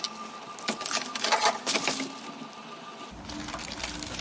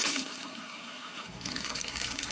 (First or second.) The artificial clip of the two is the second